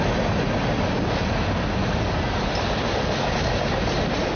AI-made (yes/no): no